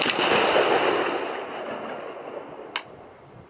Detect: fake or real real